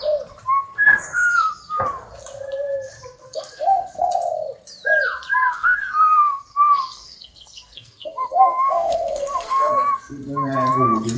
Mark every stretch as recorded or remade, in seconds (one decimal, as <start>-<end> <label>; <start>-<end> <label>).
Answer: 0.0-0.7 recorded; 0.7-1.5 remade; 1.5-3.2 recorded; 3.2-4.1 remade; 4.1-5.4 recorded; 5.4-9.9 remade; 9.9-11.2 recorded